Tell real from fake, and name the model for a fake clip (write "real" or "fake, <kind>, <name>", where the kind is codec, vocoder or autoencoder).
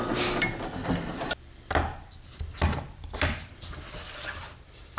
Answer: real